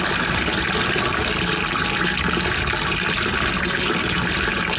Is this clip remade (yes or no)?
no